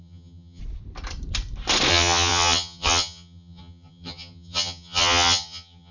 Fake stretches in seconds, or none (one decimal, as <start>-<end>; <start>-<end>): 0.0-0.6; 1.9-5.9